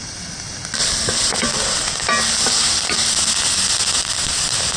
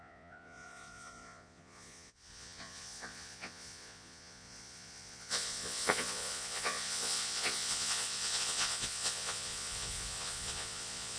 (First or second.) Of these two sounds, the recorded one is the first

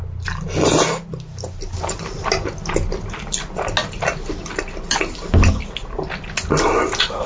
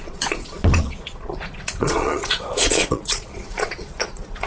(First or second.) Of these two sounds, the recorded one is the first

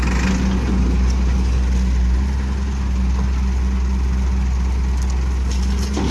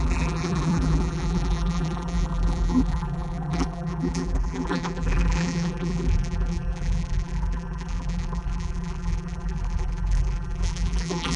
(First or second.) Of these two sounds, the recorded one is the first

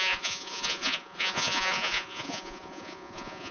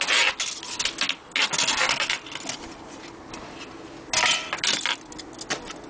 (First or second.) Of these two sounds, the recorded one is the second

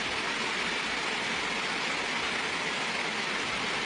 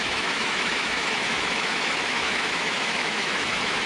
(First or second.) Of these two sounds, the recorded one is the first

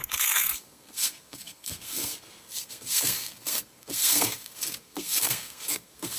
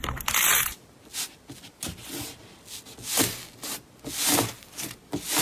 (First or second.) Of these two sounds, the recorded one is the second